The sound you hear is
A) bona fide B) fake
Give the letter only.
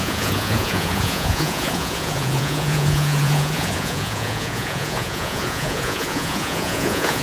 B